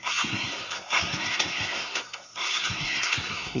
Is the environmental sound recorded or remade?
remade